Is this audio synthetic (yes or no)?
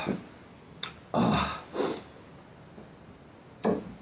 no